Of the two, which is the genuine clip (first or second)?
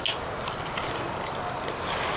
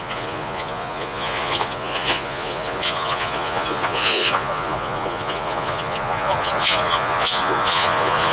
first